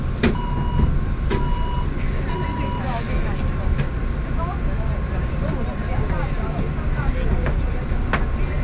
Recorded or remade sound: recorded